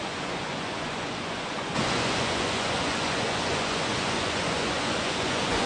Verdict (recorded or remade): remade